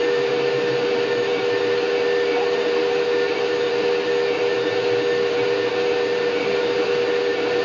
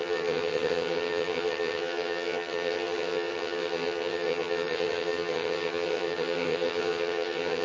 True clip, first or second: first